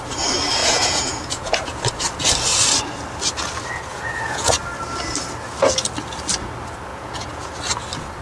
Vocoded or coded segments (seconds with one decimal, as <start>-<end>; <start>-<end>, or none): 0.6-1.9; 3.9-4.5; 6.9-7.5